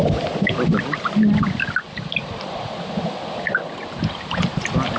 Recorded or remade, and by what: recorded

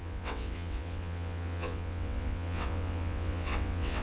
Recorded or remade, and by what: remade, vocoder, WaveNeXt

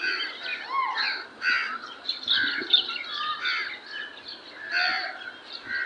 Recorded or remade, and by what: recorded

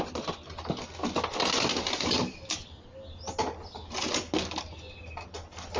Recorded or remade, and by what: recorded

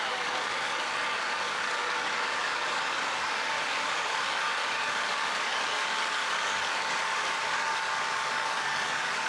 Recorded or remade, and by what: remade, codec, DAC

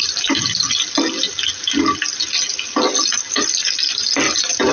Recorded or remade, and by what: recorded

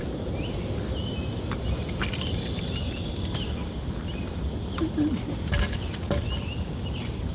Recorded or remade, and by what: recorded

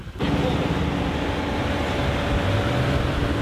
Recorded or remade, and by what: recorded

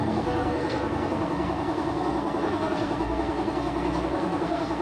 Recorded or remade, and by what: remade, codec, SNAC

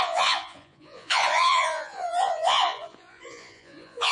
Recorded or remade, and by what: remade, vocoder, Vocos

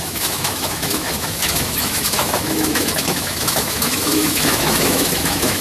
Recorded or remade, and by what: remade, autoencoder, DAC-VAE